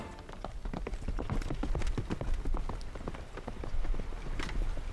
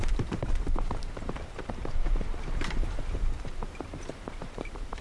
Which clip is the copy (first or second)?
second